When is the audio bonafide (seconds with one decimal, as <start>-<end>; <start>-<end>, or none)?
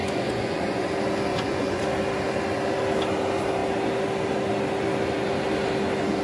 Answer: 0.9-1.3; 1.8-6.2